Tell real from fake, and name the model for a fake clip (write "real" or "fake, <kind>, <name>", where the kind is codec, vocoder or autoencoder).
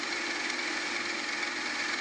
real